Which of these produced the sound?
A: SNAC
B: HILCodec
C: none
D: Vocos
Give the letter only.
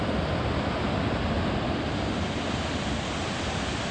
C